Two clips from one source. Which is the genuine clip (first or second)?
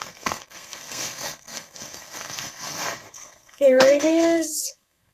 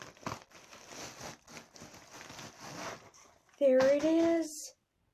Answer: second